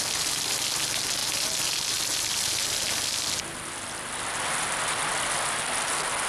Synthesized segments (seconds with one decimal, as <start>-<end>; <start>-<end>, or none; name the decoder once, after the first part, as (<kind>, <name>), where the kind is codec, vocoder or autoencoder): none

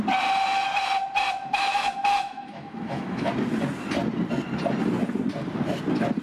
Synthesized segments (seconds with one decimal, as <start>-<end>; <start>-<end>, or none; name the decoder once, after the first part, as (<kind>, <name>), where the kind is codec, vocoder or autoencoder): 1.5-3.3 (autoencoder, DAC-VAE)

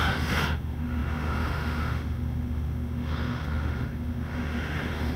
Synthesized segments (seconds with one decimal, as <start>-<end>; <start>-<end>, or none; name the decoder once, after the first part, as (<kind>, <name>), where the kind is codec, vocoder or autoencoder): 0.0-5.2 (autoencoder, DAC-VAE)

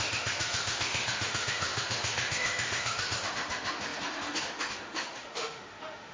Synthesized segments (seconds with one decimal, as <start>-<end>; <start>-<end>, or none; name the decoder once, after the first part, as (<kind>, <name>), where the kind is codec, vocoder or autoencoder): 0.0-6.1 (autoencoder, DAC-VAE)

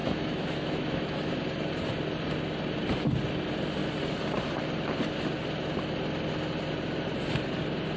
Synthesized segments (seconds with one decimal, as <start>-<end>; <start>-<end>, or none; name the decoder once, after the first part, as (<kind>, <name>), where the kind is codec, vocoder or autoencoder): 0.0-1.3 (autoencoder, DAC-VAE)